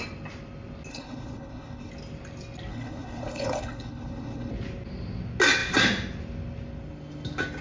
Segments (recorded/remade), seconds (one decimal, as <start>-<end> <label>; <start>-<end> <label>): 0.0-0.9 recorded; 0.9-1.9 remade; 1.9-2.7 recorded; 2.7-4.5 remade; 4.5-7.6 recorded